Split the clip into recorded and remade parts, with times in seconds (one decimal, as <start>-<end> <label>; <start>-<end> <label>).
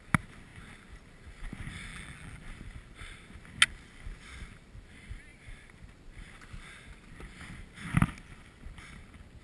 0.0-1.9 recorded; 1.9-2.4 remade; 2.4-9.4 recorded